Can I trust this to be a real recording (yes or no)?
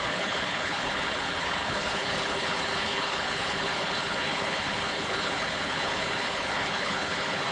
no